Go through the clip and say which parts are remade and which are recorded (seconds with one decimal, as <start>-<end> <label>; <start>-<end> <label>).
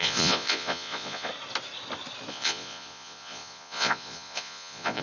0.0-1.3 remade; 1.3-2.3 recorded; 2.3-5.0 remade